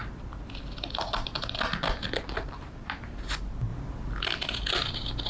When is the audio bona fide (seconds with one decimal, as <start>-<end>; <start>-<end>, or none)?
0.0-5.3